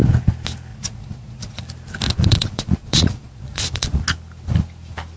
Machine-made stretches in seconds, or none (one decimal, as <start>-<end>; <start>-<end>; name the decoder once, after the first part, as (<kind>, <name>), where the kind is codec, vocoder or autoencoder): 0.7-1.6 (vocoder, Vocos); 2.1-4.0